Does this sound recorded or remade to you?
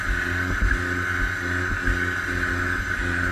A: recorded